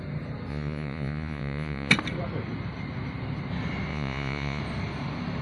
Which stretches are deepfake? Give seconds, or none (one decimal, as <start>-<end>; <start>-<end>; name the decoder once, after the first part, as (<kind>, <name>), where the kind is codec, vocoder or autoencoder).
0.5-1.9 (vocoder, Vocos); 3.9-4.6